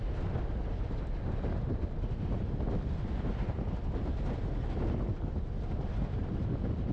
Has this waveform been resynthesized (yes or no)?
no